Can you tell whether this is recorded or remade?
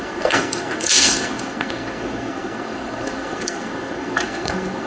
remade